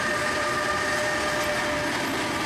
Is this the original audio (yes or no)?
yes